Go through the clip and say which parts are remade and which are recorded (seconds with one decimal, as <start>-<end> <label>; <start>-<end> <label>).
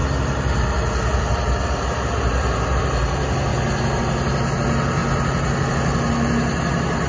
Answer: 0.0-7.1 recorded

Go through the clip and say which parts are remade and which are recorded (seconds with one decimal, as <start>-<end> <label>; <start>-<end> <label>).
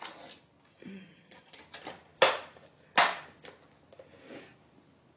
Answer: 0.0-0.7 recorded; 0.7-1.6 remade; 1.6-5.2 recorded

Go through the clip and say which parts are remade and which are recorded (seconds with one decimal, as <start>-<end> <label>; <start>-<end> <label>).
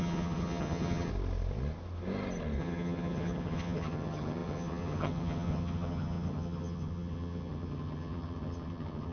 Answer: 0.0-1.1 remade; 1.1-2.6 recorded; 2.6-9.1 remade